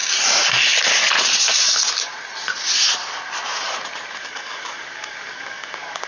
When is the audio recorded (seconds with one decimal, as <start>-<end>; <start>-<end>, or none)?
0.0-1.4; 1.8-4.2